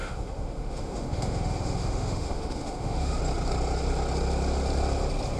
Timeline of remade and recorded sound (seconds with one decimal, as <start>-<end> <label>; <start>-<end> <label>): 0.0-3.2 remade; 3.2-5.4 recorded